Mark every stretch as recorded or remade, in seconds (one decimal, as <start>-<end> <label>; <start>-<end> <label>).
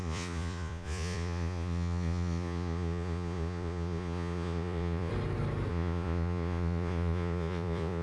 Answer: 0.0-5.1 remade; 5.1-5.7 recorded; 5.7-8.0 remade